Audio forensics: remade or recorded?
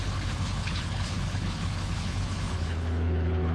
remade